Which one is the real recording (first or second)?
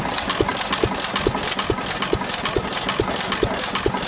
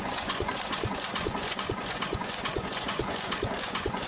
first